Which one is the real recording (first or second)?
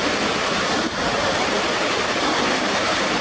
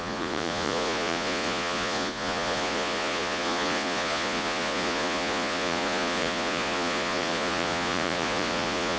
first